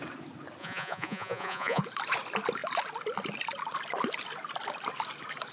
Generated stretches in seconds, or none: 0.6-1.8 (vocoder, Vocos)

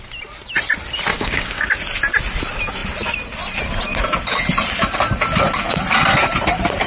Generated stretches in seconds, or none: 1.1-1.7 (codec, DAC)

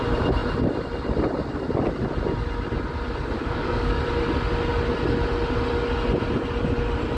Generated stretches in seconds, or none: 3.4-4.0 (codec, DAC)

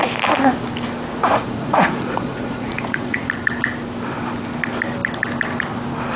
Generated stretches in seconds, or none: 1.2-3.3 (vocoder, Vocos)

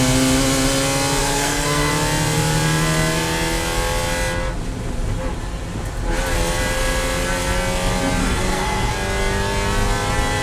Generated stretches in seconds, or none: 1.2-1.9 (codec, SNAC); 8.2-8.9

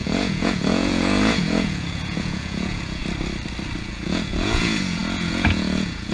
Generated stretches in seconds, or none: 0.0-3.0 (vocoder, Vocos); 3.8-6.1

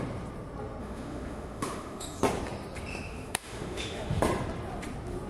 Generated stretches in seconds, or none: 0.8-2.2 (autoencoder, DAC-VAE); 2.9-4.2